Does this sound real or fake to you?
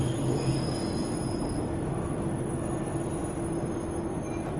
real